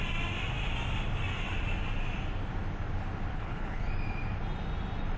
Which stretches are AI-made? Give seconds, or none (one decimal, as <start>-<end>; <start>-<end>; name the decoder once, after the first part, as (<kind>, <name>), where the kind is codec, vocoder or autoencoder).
3.3-3.8 (codec, HILCodec)